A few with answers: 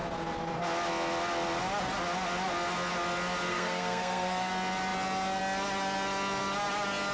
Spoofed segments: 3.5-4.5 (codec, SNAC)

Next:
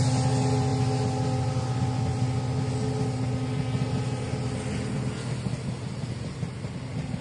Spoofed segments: none

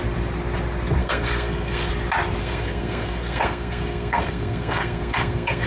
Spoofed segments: 1.0-1.9 (codec, SNAC); 2.4-5.7

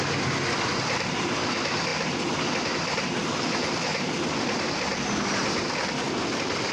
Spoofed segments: none

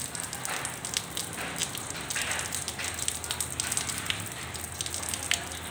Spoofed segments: none

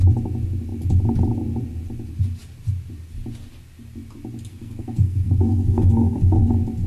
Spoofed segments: 4.5-6.5 (codec, SNAC)

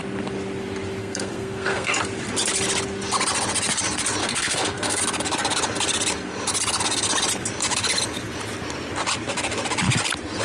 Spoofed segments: 1.0-1.9 (codec, SNAC); 4.2-5.0

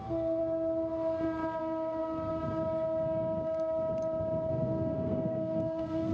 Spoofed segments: 0.0-0.4 (codec, SNAC); 1.6-2.3; 4.5-6.1